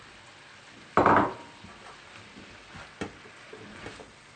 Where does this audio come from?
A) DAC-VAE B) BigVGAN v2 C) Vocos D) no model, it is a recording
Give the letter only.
D